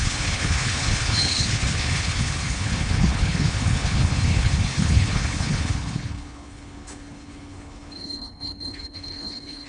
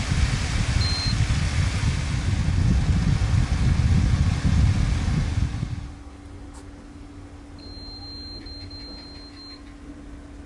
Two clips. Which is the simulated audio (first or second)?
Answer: first